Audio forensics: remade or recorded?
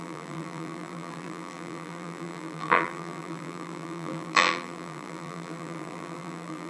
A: remade